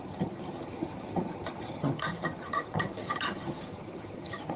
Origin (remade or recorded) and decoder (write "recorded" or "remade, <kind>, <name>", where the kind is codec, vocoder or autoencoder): remade, vocoder, HiFi-GAN